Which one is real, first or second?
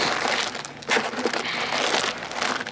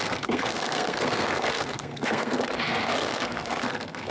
first